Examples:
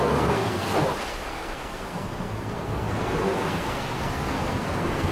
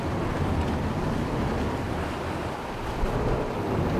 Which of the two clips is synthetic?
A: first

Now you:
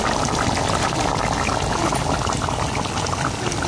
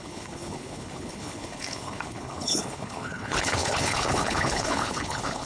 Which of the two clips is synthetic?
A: second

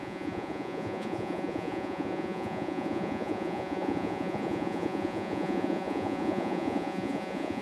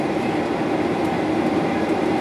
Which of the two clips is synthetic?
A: first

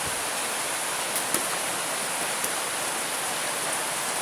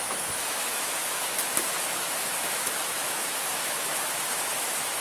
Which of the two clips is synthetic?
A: second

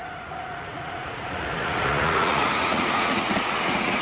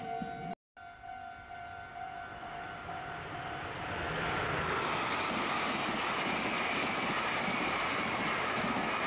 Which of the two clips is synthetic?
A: first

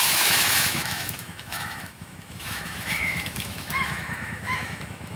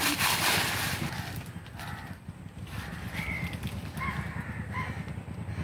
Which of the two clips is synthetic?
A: first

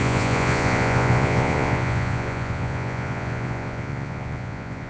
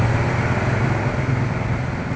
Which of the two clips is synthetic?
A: first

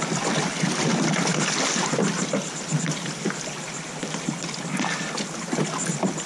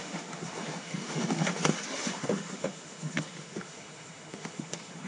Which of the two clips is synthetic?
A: second